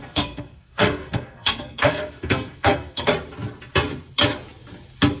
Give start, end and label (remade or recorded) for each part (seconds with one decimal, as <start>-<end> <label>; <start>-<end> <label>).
0.0-3.1 remade; 3.1-5.2 recorded